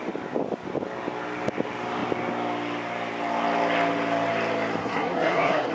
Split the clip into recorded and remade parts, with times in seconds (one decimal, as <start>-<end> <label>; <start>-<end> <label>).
0.0-4.8 recorded; 4.8-5.7 remade